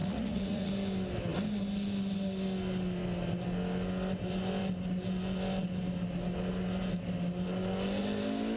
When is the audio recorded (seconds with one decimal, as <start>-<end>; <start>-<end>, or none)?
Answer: 0.7-8.6